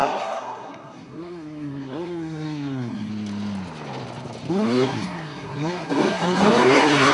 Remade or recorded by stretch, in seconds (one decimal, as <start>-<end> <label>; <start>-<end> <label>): 0.0-3.1 remade; 3.1-4.5 recorded; 4.5-7.1 remade